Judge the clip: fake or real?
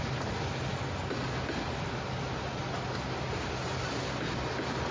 real